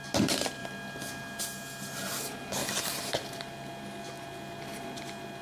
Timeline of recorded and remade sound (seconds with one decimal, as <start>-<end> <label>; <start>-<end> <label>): 0.0-5.4 recorded